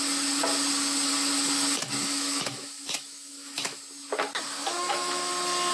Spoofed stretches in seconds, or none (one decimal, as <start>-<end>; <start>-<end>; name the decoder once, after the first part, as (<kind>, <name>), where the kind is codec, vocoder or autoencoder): 2.0-3.8 (autoencoder, DAC-VAE); 4.6-5.3